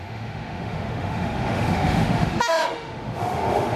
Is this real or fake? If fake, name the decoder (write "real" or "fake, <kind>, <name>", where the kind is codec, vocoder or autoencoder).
fake, autoencoder, DAC-VAE